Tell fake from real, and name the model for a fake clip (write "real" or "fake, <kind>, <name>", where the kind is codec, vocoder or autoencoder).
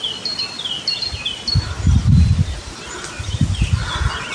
real